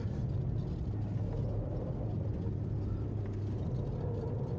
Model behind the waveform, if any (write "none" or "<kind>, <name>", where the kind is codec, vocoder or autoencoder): none